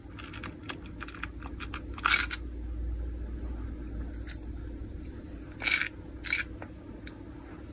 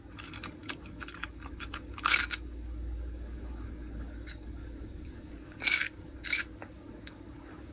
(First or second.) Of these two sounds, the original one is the first